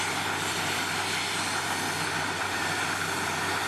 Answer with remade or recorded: remade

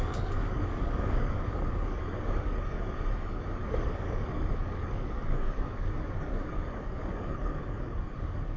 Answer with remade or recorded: remade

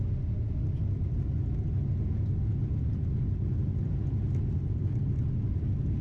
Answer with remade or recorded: recorded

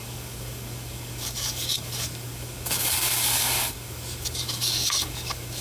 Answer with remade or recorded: remade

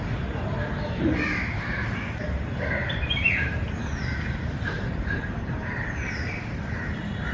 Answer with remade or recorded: remade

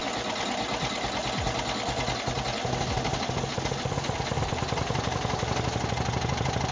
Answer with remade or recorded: recorded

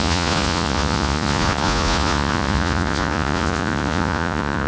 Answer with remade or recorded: remade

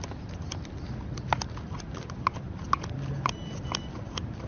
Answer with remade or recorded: recorded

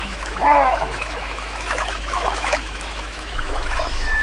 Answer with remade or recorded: remade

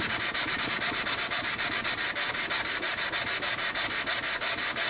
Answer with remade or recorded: recorded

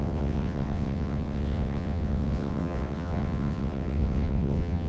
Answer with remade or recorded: remade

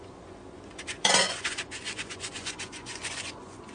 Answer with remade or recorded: remade